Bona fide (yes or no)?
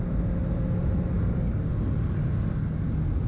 yes